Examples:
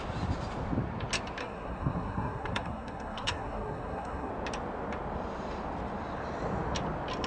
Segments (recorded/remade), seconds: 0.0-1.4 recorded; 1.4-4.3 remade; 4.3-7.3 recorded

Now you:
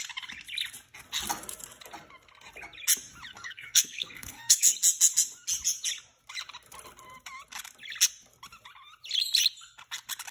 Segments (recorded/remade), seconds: 0.0-3.3 recorded; 3.3-4.7 remade; 4.7-10.3 recorded

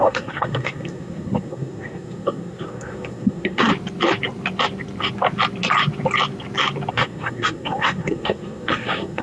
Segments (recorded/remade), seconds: 0.0-3.7 remade; 3.7-6.9 recorded; 6.9-9.2 remade

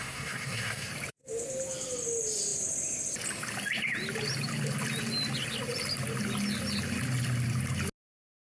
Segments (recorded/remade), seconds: 0.0-0.9 remade; 0.9-8.4 recorded

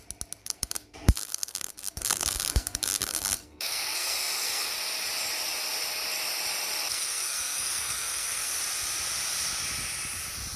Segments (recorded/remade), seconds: 0.0-0.4 recorded; 0.4-4.7 remade; 4.7-6.9 recorded; 6.9-8.6 remade; 8.6-10.6 recorded

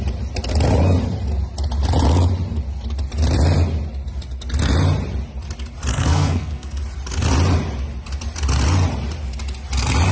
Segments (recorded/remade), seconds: 0.0-5.9 recorded; 5.9-6.8 remade; 6.8-10.1 recorded